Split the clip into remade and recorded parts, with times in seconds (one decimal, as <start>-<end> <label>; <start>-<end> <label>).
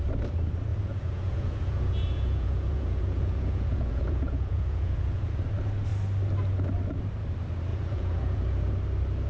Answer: 0.0-0.7 recorded; 0.7-5.4 remade; 5.4-7.7 recorded; 7.7-8.7 remade; 8.7-9.3 recorded